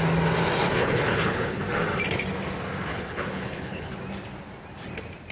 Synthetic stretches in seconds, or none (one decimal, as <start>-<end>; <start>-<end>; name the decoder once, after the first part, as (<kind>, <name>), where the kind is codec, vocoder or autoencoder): 0.8-1.6 (codec, HILCodec); 2.9-3.9